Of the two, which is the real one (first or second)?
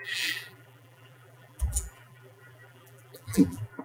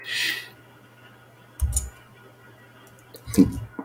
second